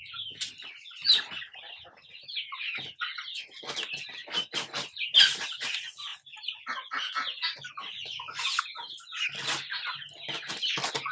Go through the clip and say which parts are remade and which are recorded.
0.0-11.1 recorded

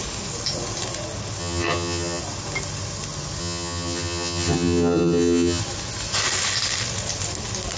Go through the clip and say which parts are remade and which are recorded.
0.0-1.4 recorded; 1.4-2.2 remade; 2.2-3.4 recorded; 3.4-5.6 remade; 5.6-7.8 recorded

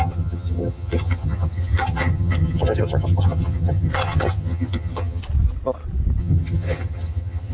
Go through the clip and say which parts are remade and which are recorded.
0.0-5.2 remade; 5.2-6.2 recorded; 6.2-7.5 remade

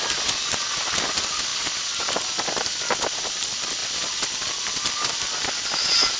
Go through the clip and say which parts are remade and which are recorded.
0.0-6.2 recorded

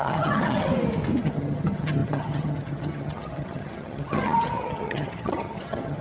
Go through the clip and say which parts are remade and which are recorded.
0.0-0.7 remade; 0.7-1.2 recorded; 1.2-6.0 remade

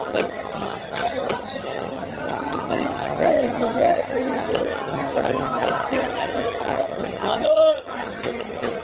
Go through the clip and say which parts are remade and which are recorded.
0.0-8.8 remade

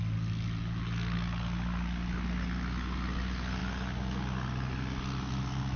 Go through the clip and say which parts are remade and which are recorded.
0.0-5.8 recorded

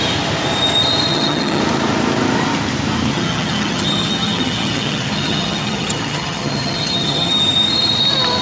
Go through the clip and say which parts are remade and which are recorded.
0.0-1.1 recorded; 1.1-1.6 remade; 1.6-3.1 recorded; 3.1-7.4 remade; 7.4-8.4 recorded